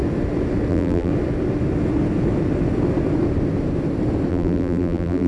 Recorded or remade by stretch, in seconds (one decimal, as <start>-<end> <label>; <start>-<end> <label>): 0.0-0.7 recorded; 0.7-1.1 remade; 1.1-4.3 recorded; 4.3-5.3 remade